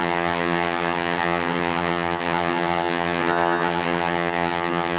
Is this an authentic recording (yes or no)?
no